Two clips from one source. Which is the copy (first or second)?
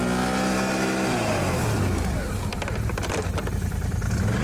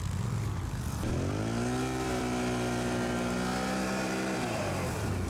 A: second